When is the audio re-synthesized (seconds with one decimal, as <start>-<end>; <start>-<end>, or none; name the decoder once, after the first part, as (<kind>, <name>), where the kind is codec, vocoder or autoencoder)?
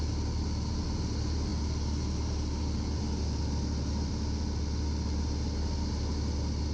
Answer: none